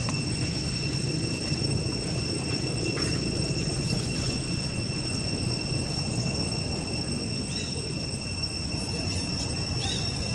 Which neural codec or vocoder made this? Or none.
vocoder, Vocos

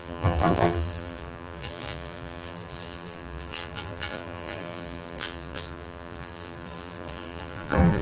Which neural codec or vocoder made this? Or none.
vocoder, BigVGAN v2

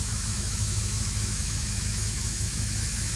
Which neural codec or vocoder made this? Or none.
autoencoder, DAC-VAE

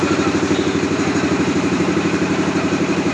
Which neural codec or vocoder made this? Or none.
vocoder, BigVGAN v2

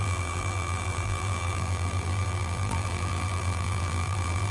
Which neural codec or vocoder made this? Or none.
vocoder, BigVGAN v2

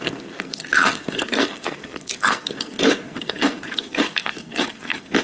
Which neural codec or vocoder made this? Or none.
codec, SNAC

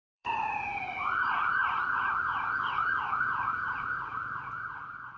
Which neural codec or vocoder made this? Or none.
vocoder, Vocos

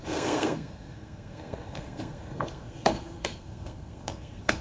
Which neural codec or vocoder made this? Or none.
codec, SNAC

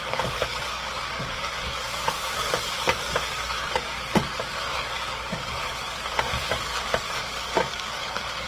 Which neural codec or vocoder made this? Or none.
codec, DAC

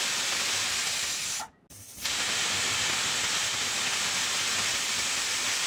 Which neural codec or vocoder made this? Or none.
none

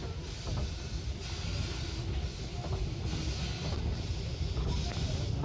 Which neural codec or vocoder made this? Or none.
none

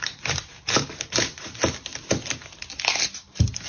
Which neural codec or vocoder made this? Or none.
none